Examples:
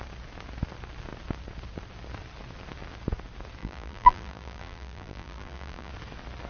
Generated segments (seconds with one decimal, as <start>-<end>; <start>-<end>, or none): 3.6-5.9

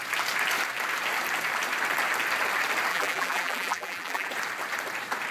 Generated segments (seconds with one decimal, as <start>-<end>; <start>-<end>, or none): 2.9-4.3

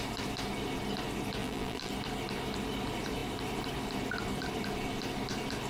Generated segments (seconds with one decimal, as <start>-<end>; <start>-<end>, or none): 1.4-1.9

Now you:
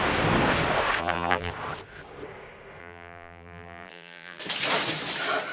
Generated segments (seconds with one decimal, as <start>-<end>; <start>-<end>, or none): 1.0-1.5; 2.8-4.4

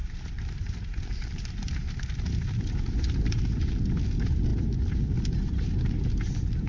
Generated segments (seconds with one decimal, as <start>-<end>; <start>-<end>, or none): 0.0-1.5

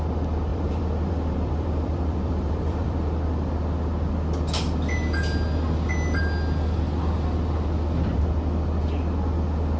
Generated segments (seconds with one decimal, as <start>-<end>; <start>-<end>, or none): 0.5-3.2

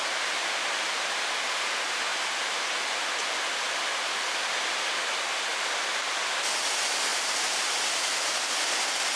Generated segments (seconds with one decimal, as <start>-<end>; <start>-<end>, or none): 2.1-2.7; 5.5-6.0; 7.1-7.8